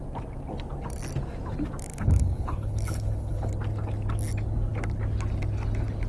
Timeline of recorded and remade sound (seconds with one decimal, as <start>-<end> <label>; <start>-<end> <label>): 0.0-1.9 recorded; 1.9-3.5 remade; 3.5-6.1 recorded